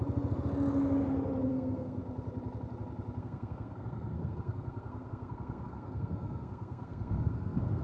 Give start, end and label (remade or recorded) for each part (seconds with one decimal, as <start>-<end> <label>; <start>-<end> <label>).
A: 0.0-1.5 recorded; 1.5-2.0 remade; 2.0-3.2 recorded; 3.2-7.8 remade